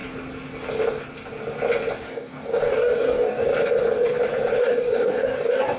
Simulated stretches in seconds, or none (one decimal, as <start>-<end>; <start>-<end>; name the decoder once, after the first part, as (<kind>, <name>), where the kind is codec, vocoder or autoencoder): 2.0-3.5 (codec, DAC); 4.6-5.8